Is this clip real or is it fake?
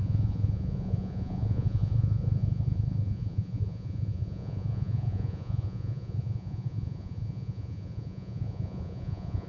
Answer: fake